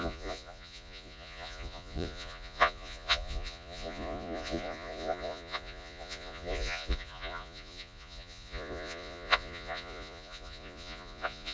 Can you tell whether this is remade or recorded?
remade